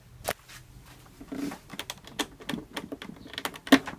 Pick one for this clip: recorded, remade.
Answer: recorded